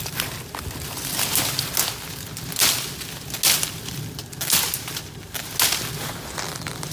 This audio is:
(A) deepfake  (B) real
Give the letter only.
B